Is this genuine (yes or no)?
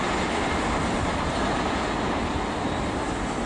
yes